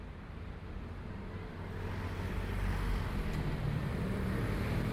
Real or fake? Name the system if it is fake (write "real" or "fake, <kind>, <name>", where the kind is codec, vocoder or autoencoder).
real